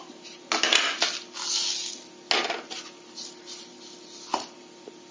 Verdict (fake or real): real